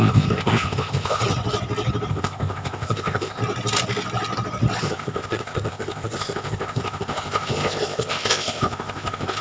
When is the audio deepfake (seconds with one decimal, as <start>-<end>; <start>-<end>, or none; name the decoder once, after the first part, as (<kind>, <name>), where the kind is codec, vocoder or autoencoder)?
0.0-1.2 (codec, ZipCodec); 2.1-3.4; 4.8-9.4